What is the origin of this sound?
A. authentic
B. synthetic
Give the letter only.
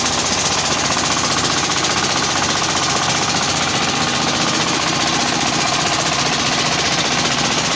A